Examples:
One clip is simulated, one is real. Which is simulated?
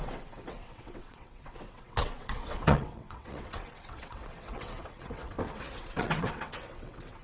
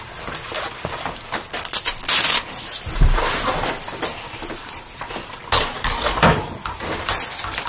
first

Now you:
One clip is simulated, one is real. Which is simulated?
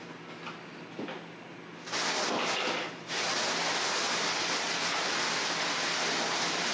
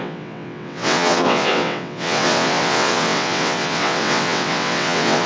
second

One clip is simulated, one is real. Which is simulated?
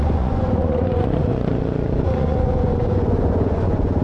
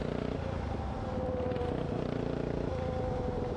first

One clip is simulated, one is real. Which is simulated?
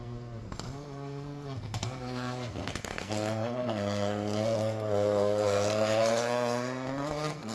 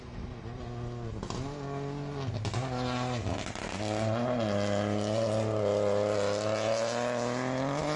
first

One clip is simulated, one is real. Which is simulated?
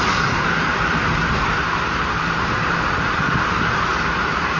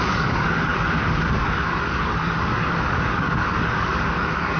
second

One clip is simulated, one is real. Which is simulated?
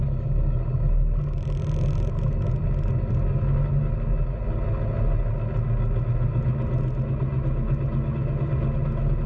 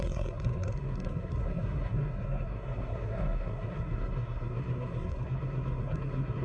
second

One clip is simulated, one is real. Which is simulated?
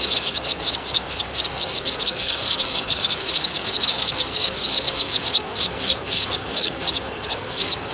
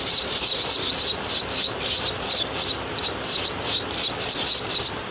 first